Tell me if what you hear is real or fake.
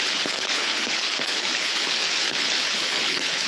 fake